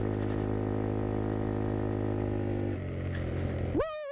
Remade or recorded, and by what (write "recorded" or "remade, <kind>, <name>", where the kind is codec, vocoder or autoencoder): recorded